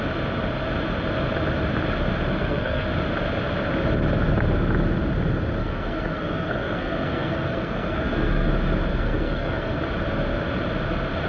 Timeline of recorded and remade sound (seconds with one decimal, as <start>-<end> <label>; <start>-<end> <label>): 0.0-2.3 recorded; 2.3-2.9 remade; 2.9-5.6 recorded; 5.6-8.5 remade; 8.5-8.9 recorded; 8.9-9.8 remade; 9.8-11.3 recorded